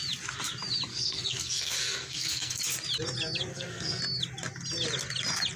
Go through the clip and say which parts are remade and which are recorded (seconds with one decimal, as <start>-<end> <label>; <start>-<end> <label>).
0.0-0.9 recorded; 0.9-2.6 remade; 2.6-3.5 recorded; 3.5-4.0 remade; 4.0-5.6 recorded